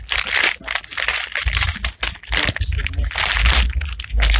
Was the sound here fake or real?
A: real